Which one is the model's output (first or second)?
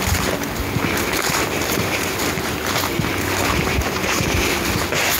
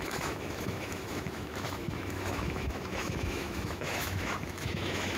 second